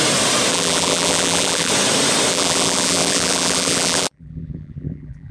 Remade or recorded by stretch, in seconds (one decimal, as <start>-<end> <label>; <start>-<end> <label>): 0.0-0.5 recorded; 0.5-1.7 remade; 1.7-2.3 recorded; 2.3-5.3 remade